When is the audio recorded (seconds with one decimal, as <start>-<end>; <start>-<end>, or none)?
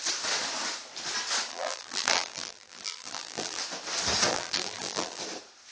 0.0-1.5; 3.6-4.3; 5.2-5.7